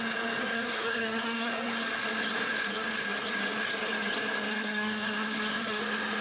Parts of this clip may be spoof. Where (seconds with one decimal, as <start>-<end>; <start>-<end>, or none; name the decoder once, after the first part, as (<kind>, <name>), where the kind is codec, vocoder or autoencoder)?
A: 0.4-1.5 (codec, SNAC); 4.5-5.8